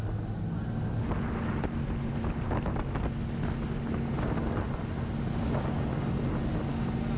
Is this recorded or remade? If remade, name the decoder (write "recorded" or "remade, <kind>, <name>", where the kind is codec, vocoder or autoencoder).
recorded